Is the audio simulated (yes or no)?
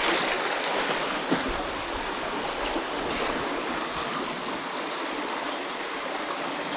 no